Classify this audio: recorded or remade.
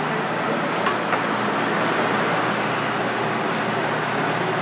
recorded